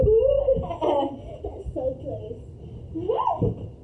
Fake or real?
real